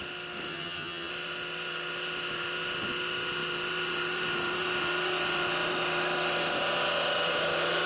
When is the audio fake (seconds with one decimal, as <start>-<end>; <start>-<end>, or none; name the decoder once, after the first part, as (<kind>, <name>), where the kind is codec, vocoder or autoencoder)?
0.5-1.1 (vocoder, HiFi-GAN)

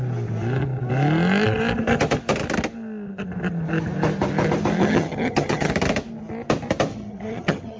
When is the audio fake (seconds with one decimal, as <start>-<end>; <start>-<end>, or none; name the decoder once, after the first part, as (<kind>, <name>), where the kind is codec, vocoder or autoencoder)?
4.8-5.7 (vocoder, HiFi-GAN); 6.9-7.8

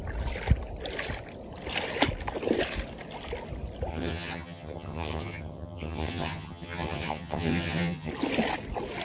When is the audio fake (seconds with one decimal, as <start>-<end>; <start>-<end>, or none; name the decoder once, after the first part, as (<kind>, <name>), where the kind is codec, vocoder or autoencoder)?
3.9-8.1 (vocoder, HiFi-GAN)